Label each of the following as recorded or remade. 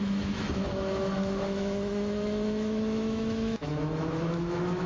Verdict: remade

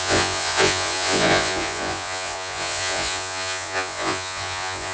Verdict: remade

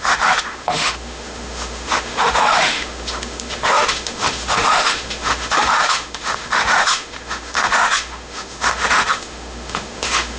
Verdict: remade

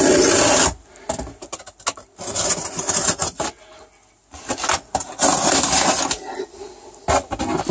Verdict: recorded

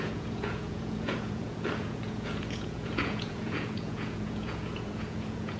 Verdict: remade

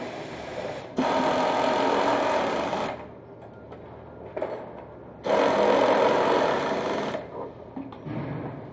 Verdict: recorded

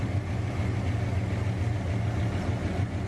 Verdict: recorded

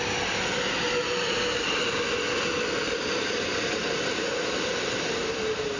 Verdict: recorded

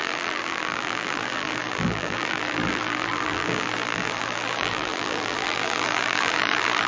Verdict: remade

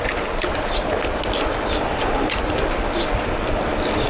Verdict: recorded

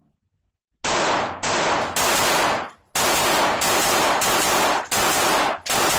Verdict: recorded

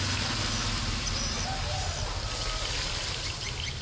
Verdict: recorded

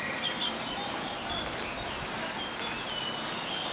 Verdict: recorded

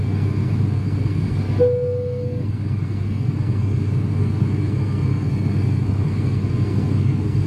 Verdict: remade